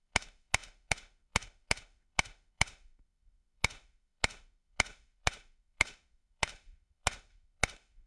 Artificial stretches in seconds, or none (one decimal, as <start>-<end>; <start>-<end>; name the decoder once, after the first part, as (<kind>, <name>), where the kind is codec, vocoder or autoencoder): 0.0-8.1 (autoencoder, DAC-VAE)